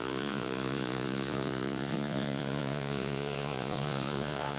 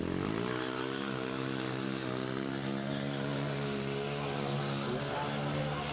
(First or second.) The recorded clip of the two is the second